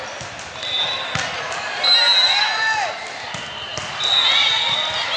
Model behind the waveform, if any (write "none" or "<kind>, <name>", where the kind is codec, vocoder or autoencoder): none